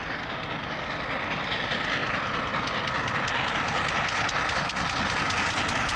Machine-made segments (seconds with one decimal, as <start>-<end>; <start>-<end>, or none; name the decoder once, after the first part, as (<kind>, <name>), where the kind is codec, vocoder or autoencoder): none